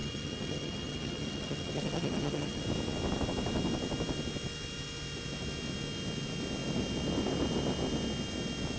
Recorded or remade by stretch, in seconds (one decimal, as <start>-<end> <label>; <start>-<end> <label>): 0.0-2.6 remade; 2.6-8.8 recorded